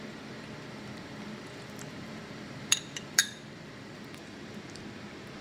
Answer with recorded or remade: remade